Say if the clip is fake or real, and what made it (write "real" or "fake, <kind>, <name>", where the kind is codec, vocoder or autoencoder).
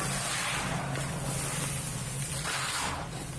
real